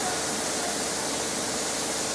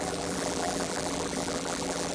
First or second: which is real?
first